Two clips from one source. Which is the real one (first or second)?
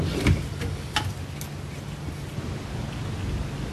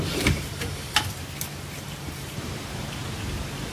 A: first